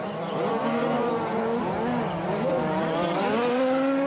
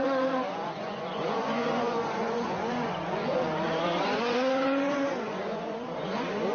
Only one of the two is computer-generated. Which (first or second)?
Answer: second